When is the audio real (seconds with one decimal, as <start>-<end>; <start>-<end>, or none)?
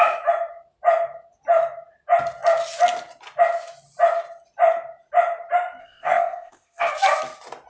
0.0-5.8; 6.9-7.7